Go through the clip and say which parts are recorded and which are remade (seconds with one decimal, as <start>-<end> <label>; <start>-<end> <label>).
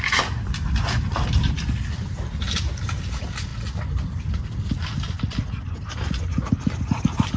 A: 0.0-7.4 recorded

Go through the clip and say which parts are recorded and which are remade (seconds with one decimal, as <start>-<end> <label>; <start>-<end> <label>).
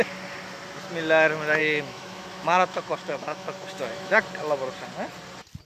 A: 0.0-1.6 recorded; 1.6-4.2 remade; 4.2-5.6 recorded